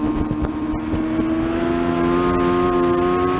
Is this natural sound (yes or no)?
yes